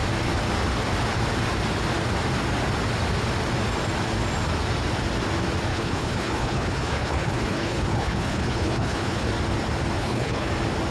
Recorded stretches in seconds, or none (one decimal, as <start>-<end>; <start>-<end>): 0.0-5.7; 9.3-10.0; 10.5-10.9